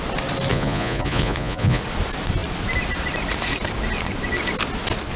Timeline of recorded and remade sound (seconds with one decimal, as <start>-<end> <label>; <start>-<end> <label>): 0.0-0.5 recorded; 0.5-1.8 remade; 1.8-5.2 recorded